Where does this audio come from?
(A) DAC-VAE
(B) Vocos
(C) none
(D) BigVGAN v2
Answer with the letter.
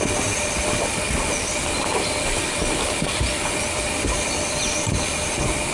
D